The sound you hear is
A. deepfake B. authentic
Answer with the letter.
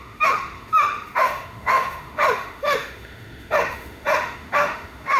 A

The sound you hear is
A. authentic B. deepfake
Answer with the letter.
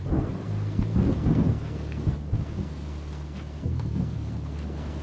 B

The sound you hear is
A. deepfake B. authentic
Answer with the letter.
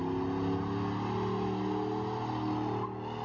B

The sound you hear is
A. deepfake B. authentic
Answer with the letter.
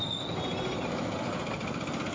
B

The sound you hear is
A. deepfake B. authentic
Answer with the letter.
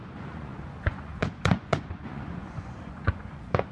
A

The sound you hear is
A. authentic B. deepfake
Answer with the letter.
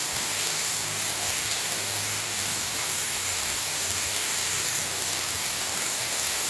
B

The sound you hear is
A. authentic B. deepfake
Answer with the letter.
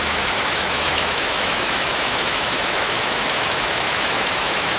B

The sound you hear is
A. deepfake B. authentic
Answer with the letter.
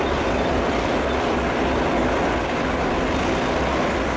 B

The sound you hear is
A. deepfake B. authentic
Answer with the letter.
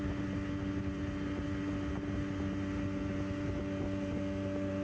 B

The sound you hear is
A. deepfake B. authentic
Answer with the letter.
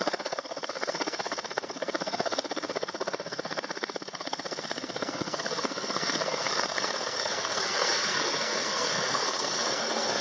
A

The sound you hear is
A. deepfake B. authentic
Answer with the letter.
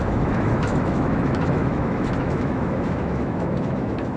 A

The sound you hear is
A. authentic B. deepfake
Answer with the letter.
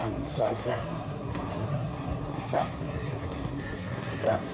B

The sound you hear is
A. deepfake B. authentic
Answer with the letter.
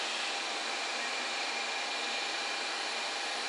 B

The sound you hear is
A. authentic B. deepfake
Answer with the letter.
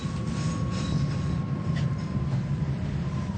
A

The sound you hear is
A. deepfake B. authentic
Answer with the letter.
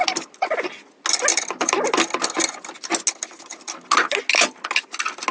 B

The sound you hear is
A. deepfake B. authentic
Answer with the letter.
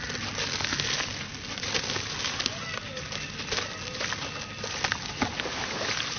B